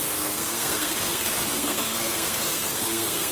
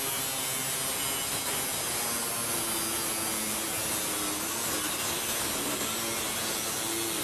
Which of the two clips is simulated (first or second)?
first